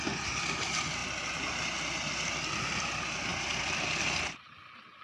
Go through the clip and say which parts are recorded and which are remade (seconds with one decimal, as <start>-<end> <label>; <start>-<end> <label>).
0.0-5.0 recorded